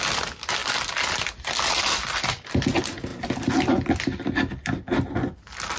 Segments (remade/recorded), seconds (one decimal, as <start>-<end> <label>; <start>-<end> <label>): 0.0-5.8 recorded